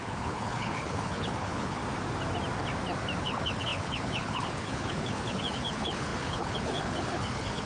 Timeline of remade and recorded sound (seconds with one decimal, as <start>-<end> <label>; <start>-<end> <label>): 0.0-1.8 remade; 1.8-3.2 recorded; 3.2-7.7 remade